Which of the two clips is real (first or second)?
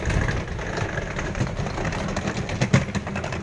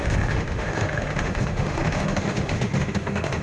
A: first